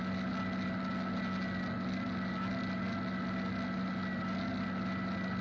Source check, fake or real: real